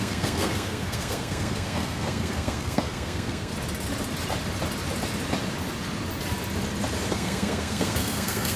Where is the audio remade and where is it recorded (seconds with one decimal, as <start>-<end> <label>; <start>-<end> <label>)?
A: 0.0-3.5 remade; 3.5-7.1 recorded; 7.1-8.6 remade